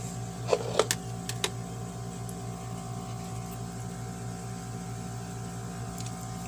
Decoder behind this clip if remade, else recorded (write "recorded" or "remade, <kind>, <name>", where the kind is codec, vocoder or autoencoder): recorded